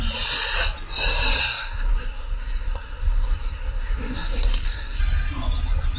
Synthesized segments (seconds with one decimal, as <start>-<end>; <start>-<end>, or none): 1.4-5.0